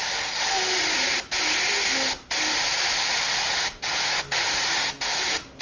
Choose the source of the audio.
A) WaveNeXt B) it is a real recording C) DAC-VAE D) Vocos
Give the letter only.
B